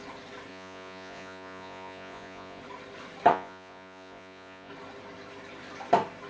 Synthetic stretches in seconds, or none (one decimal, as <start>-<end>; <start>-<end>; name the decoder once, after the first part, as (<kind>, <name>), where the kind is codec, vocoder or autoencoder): 0.5-2.6 (vocoder, Vocos); 3.3-4.7